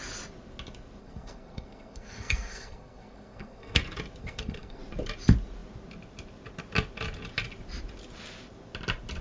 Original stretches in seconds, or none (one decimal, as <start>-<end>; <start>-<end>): 0.0-1.0; 3.8-4.2; 4.8-9.2